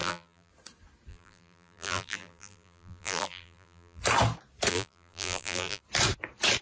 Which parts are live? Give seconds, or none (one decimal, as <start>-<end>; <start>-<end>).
0.5-1.1; 4.0-4.7; 5.8-6.6